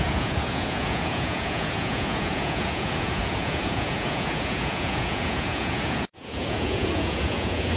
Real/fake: fake